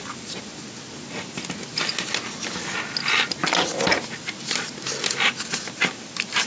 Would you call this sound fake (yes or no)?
no